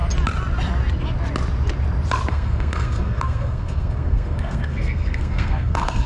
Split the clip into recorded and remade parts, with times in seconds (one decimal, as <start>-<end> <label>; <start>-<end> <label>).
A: 0.0-2.3 recorded; 2.3-6.1 remade